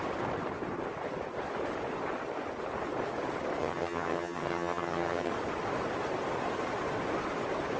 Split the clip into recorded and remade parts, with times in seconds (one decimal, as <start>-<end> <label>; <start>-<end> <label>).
0.0-3.6 recorded; 3.6-5.3 remade; 5.3-7.8 recorded